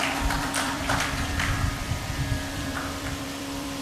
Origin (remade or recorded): remade